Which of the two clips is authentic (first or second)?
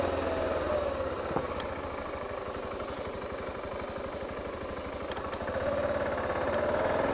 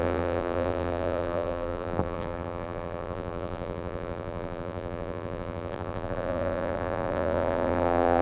first